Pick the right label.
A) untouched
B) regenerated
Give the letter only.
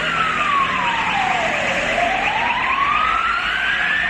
A